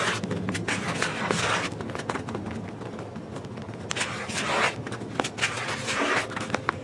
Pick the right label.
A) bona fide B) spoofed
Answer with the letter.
A